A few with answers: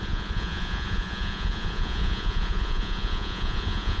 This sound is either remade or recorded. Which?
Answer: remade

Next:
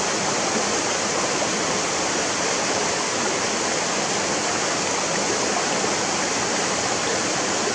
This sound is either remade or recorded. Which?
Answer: recorded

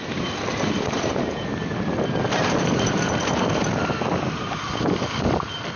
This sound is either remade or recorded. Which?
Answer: recorded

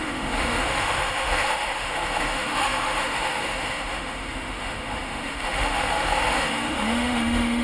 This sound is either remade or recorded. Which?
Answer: remade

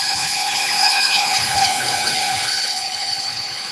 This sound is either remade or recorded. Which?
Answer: remade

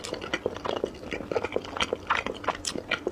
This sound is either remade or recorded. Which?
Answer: recorded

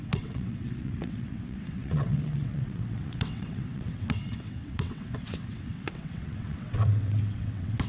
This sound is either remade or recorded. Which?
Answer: remade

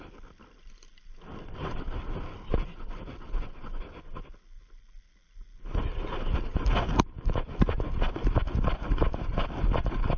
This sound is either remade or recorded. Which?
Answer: recorded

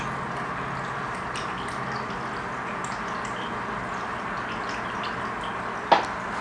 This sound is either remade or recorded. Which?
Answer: recorded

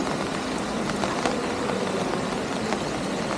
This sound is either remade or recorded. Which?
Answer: recorded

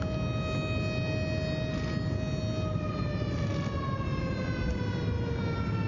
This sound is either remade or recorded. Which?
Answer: recorded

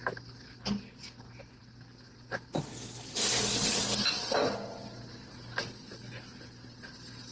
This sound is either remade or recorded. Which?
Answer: recorded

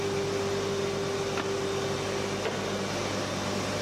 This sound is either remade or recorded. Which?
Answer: recorded